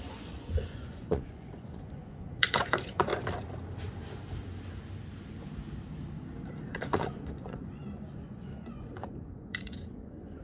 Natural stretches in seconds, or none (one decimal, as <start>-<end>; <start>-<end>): 3.1-6.7